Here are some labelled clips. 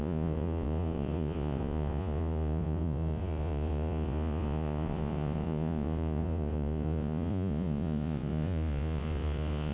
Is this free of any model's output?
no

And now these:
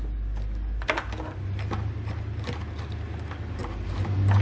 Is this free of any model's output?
yes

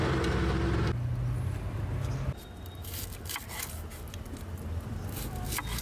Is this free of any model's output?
yes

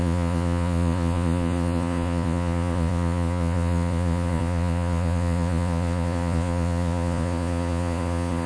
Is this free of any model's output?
no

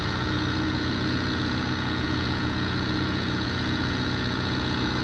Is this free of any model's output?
no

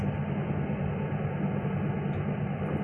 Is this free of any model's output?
yes